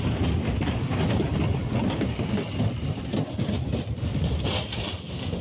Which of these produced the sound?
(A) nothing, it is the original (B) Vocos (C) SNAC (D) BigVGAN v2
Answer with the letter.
A